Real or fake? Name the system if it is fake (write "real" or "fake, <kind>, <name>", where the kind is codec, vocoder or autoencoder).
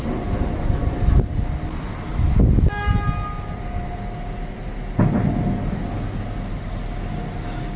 real